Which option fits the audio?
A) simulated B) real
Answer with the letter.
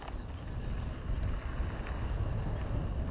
B